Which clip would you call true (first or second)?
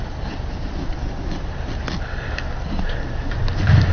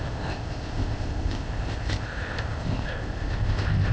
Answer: first